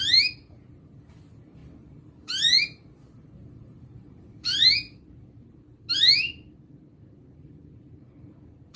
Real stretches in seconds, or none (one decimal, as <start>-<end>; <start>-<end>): none